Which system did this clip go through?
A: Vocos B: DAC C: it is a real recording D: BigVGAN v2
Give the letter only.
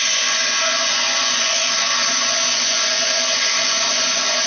A